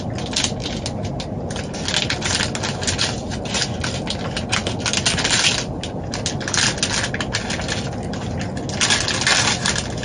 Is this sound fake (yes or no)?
no